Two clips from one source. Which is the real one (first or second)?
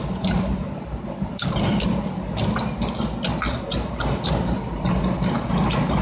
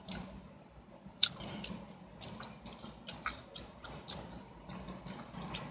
first